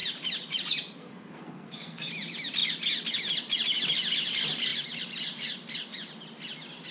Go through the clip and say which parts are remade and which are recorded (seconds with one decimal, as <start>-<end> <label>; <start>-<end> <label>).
0.0-1.0 recorded; 1.0-2.1 remade; 2.1-6.9 recorded